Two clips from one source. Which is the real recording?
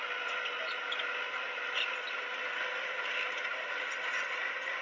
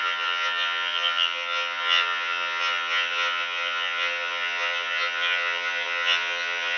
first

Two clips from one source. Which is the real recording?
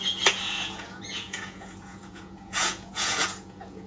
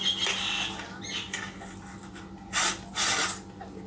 second